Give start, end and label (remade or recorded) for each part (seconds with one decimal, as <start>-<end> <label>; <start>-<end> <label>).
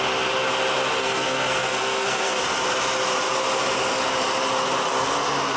0.0-1.0 recorded; 1.0-2.4 remade; 2.4-5.6 recorded